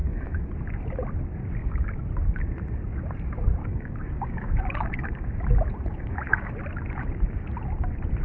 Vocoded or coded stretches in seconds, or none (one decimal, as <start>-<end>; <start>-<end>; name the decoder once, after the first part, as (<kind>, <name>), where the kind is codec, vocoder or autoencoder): 0.0-0.5 (codec, DAC); 1.6-2.1; 3.6-5.3; 5.9-6.5